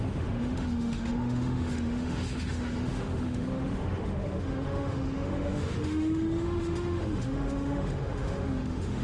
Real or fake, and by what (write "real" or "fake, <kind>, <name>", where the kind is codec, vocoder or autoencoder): fake, autoencoder, DAC-VAE